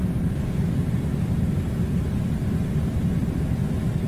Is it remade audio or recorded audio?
recorded